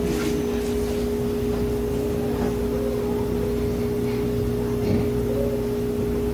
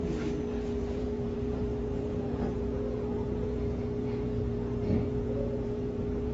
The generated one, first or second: second